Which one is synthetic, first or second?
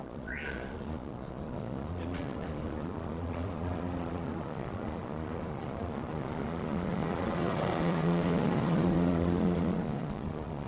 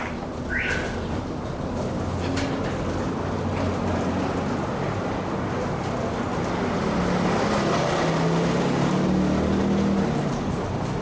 first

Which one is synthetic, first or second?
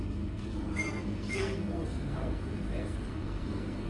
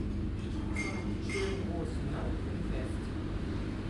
first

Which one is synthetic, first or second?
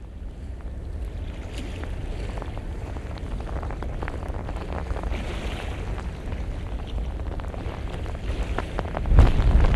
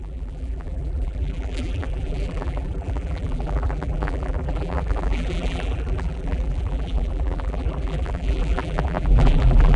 second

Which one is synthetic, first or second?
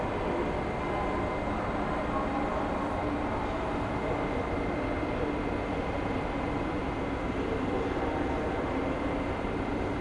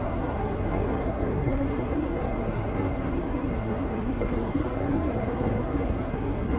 second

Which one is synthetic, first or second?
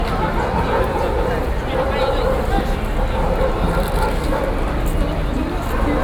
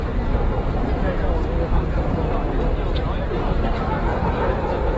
second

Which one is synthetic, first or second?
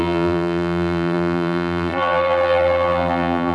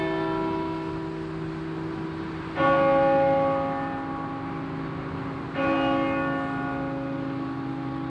first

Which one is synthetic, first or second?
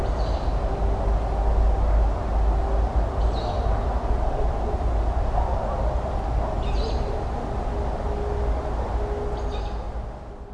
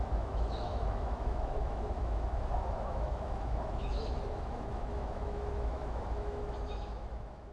second